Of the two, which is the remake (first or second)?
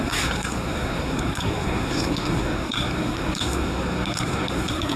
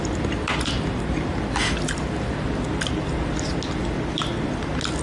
first